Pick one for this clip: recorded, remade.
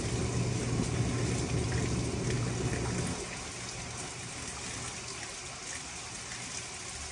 recorded